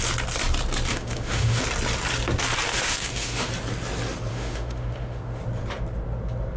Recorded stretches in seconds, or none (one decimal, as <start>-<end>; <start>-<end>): 0.0-0.9; 1.6-2.7; 3.5-4.3; 5.4-6.6